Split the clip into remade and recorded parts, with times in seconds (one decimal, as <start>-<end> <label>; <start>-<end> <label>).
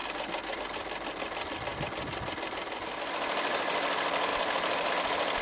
0.0-0.6 remade; 0.6-4.3 recorded; 4.3-4.9 remade; 4.9-5.4 recorded